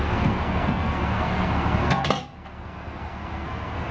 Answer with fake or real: fake